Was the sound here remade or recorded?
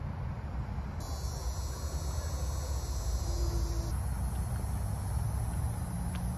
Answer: recorded